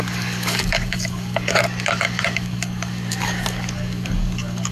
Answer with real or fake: fake